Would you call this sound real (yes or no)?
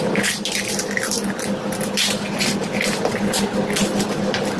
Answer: yes